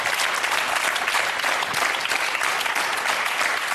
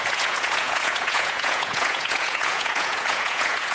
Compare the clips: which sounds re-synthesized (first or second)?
second